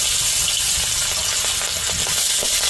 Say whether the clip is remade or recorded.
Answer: recorded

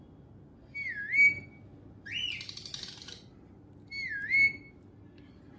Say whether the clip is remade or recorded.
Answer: recorded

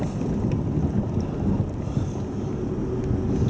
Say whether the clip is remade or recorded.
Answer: recorded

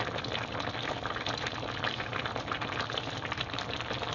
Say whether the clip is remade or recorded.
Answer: recorded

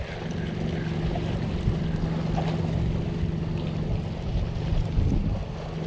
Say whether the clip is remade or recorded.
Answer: recorded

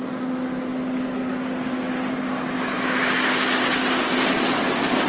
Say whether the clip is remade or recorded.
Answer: recorded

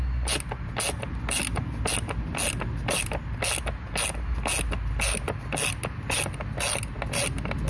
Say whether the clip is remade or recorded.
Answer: recorded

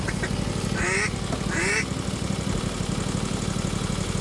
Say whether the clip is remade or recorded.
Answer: recorded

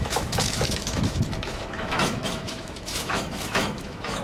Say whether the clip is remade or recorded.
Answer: remade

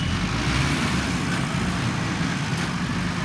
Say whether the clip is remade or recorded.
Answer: recorded